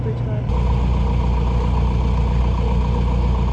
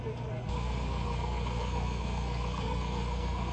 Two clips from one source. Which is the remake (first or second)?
second